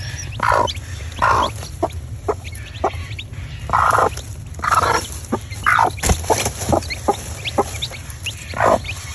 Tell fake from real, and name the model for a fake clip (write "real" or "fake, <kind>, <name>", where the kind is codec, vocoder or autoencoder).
real